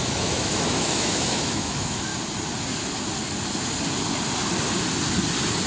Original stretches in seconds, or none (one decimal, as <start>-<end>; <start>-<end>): 2.1-5.7